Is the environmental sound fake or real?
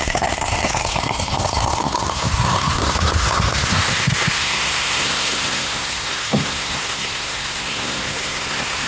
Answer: fake